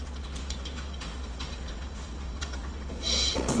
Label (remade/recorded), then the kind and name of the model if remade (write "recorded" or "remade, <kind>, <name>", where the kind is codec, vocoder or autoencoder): remade, vocoder, Vocos